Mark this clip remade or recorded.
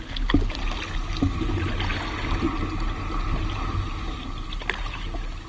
recorded